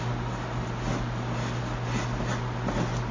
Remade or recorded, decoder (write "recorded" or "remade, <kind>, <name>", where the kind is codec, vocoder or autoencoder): recorded